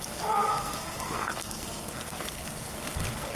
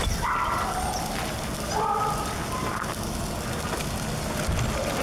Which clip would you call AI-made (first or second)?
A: first